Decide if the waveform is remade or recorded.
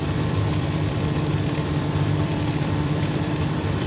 remade